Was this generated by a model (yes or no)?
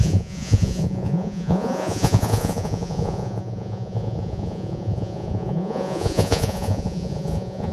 yes